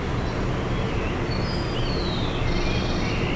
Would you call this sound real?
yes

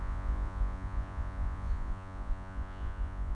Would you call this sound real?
no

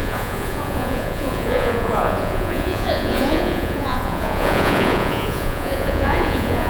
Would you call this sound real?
no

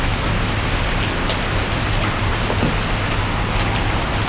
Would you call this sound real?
yes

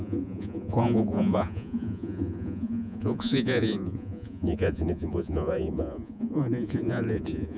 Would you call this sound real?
no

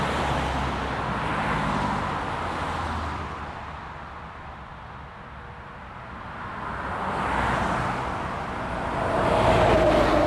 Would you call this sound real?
yes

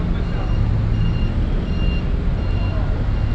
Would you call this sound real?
yes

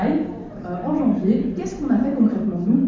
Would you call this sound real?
yes